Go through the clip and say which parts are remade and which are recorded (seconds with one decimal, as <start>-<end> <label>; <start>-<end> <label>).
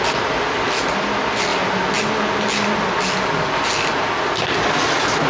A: 0.0-5.3 recorded